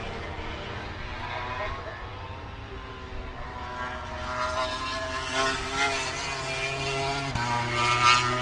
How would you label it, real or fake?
real